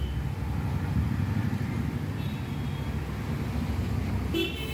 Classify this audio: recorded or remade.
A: recorded